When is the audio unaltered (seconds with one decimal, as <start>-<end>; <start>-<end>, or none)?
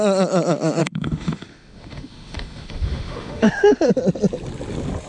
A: 0.0-0.8; 3.9-5.1